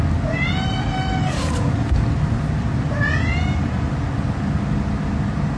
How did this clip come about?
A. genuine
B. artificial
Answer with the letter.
A